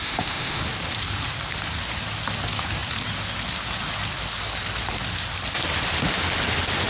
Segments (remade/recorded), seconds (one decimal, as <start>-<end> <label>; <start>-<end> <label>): 0.0-0.6 remade; 0.6-6.9 recorded